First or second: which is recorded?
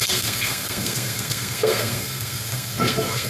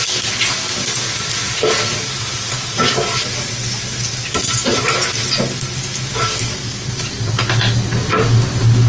second